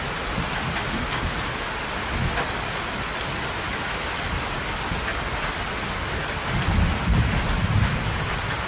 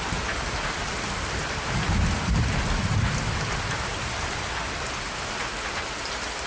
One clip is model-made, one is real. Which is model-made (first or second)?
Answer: second